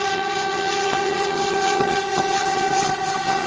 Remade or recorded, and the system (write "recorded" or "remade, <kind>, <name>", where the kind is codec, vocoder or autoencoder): remade, vocoder, HiFi-GAN